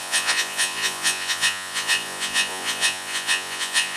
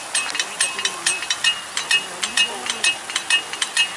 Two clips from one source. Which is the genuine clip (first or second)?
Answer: second